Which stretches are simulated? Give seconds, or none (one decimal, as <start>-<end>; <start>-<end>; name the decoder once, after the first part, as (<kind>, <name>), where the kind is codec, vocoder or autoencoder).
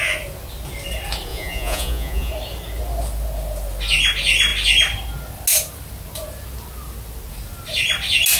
1.3-2.3 (vocoder, Vocos)